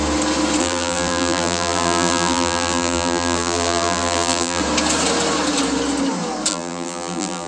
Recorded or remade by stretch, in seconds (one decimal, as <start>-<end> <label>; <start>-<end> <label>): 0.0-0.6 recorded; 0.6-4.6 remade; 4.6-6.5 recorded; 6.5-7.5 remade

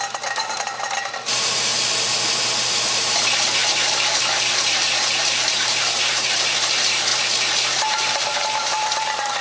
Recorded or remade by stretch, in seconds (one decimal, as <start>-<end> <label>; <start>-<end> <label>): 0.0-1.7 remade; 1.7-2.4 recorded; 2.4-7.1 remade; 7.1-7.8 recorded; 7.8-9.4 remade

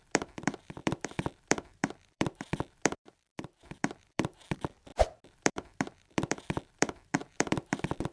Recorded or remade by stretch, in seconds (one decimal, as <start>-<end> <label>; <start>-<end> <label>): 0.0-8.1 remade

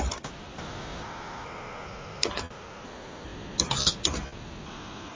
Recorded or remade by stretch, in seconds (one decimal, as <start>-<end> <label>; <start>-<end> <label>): 0.0-5.2 recorded

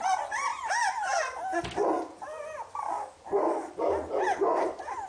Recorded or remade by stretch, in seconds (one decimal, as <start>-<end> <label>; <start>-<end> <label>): 0.0-5.1 recorded